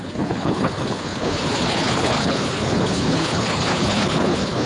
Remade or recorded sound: remade